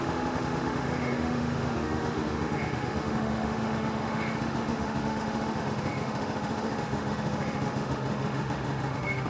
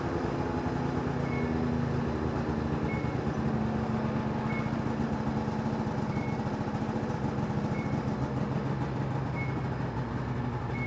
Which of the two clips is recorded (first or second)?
second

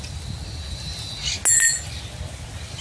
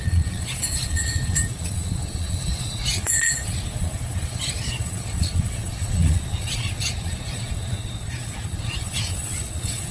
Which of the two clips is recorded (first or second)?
first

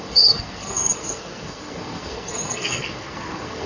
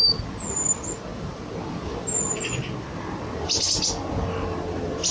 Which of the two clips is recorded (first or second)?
second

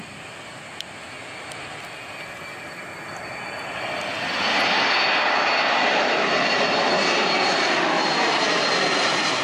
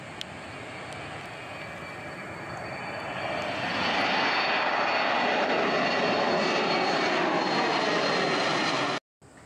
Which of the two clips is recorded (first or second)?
second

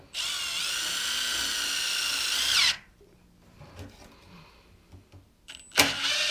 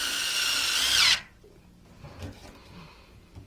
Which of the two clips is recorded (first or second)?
first